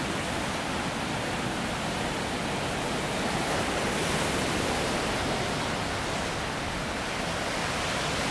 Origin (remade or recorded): recorded